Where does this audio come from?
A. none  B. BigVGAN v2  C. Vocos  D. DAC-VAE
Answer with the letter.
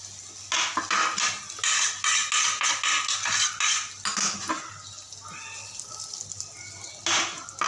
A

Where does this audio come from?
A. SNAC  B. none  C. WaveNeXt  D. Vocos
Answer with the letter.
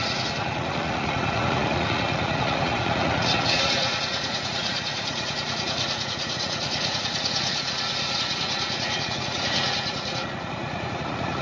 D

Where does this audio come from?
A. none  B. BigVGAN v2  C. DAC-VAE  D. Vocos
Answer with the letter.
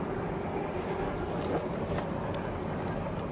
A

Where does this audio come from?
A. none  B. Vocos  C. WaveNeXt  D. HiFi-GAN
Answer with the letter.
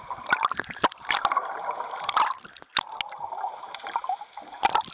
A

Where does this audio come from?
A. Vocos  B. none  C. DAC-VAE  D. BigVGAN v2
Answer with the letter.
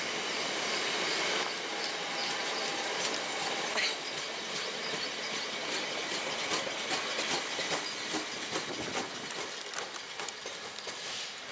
B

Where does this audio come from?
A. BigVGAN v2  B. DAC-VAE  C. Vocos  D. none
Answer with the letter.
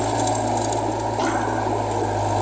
D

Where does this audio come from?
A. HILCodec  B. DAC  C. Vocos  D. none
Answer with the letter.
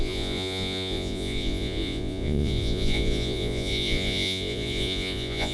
C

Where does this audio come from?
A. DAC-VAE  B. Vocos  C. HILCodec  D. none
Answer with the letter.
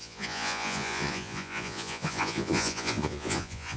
B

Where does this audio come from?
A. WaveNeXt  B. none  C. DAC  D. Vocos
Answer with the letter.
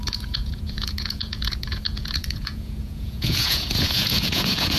D